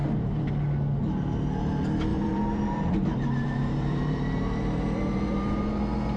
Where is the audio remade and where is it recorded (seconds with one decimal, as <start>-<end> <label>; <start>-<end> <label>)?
0.0-0.5 remade; 0.5-2.1 recorded; 2.1-5.8 remade; 5.8-6.2 recorded